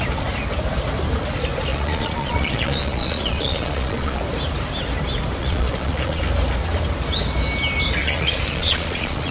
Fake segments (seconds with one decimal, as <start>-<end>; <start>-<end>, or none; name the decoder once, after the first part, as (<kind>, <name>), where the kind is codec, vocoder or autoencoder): 1.7-4.2 (vocoder, Vocos); 5.4-6.2; 8.0-9.3